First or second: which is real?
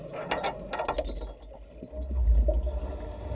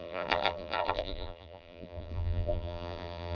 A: first